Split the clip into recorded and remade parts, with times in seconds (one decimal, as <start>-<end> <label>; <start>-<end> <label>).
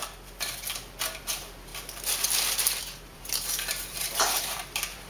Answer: 0.0-1.2 recorded; 1.2-1.7 remade; 1.7-2.8 recorded; 2.8-5.1 remade